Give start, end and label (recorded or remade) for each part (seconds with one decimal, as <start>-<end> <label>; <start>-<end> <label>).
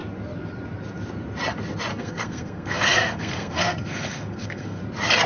0.0-1.9 recorded; 1.9-4.8 remade; 4.8-5.3 recorded